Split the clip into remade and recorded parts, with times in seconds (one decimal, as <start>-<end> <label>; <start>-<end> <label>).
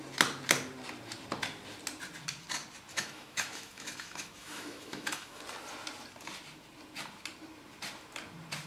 0.0-2.9 recorded; 2.9-5.4 remade; 5.4-8.7 recorded